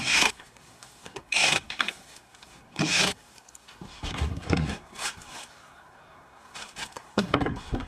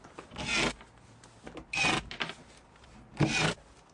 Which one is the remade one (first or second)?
first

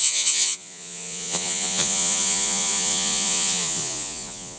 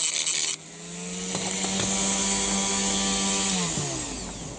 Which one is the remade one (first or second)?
first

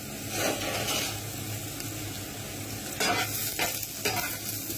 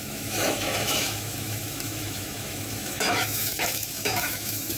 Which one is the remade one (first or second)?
second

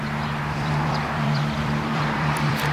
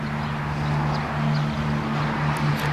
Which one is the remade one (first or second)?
first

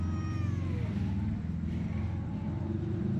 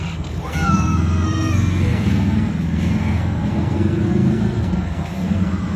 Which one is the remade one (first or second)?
second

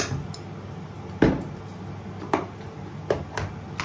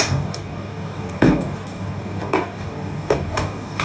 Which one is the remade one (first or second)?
second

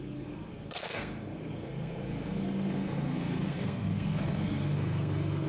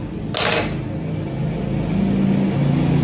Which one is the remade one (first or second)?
first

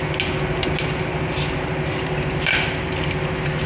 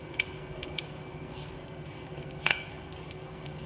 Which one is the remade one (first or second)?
second